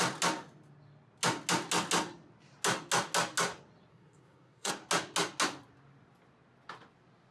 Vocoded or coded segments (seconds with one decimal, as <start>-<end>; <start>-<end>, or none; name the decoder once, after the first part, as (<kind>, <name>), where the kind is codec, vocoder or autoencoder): 3.9-4.7 (codec, SNAC)